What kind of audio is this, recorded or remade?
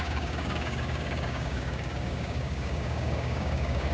remade